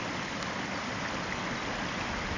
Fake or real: real